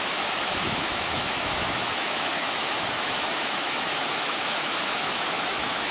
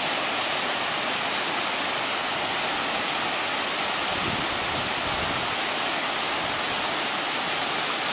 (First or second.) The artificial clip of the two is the first